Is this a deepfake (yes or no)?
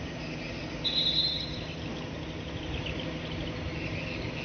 no